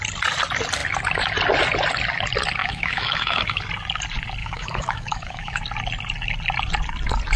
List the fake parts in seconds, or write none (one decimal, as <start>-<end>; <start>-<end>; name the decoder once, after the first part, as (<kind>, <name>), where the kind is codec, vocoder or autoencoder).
2.6-3.6 (autoencoder, DAC-VAE); 4.4-5.6